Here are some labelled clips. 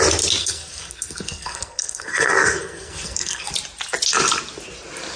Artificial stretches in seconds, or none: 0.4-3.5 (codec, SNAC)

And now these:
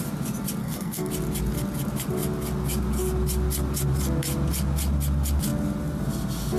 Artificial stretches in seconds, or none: 0.6-1.1 (codec, SNAC)